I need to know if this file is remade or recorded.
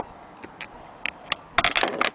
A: recorded